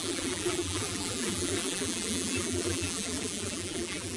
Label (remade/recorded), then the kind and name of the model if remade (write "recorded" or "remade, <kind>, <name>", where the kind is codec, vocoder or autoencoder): remade, vocoder, BigVGAN v2